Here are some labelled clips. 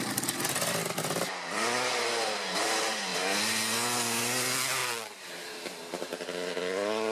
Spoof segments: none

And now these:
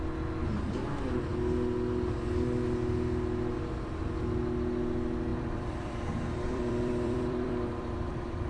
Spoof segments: 5.3-8.5 (vocoder, BigVGAN v2)